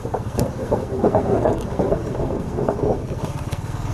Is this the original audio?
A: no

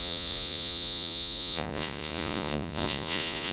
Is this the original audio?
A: no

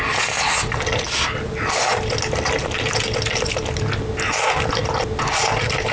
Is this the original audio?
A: yes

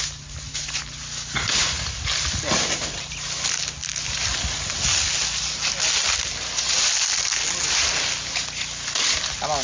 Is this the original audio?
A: yes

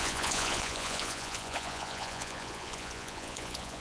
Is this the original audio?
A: no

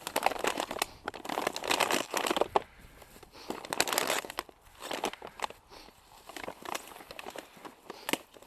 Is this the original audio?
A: yes